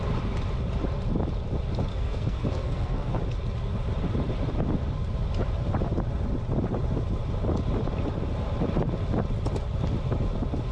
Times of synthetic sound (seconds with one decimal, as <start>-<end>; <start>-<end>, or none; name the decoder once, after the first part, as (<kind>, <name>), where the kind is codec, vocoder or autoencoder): 1.9-3.2 (codec, SNAC)